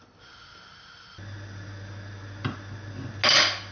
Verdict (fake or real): real